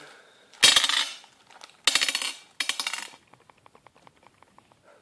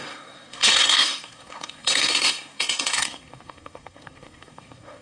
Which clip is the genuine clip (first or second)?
first